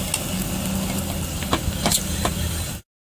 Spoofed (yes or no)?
no